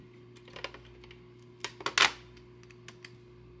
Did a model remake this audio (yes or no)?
no